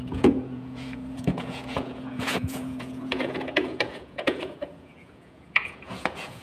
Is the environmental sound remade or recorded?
remade